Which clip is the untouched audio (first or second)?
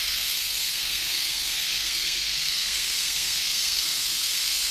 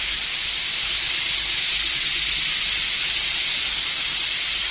second